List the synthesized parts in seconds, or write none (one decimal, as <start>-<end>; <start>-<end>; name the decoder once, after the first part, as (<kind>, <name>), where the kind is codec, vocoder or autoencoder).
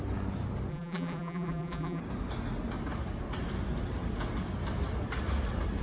0.7-2.0 (vocoder, BigVGAN v2)